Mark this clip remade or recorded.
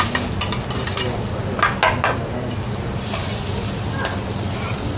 recorded